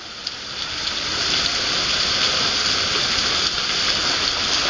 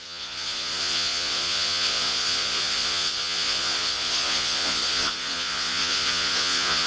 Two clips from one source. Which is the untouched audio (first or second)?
first